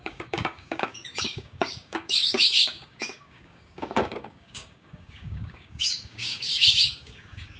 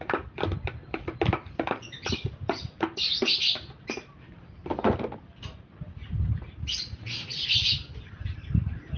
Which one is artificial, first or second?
first